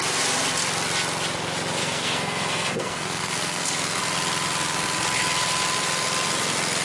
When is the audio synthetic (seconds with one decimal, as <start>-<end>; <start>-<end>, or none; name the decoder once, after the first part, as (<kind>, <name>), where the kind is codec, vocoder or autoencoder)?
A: 1.8-4.0 (codec, SNAC)